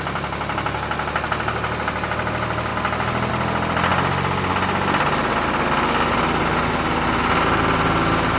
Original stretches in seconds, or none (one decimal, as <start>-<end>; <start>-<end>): 0.0-8.4